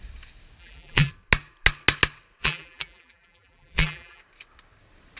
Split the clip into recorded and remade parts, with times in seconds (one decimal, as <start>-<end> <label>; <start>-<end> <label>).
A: 0.0-0.6 recorded; 0.6-1.1 remade; 1.1-2.4 recorded; 2.4-4.2 remade; 4.2-5.2 recorded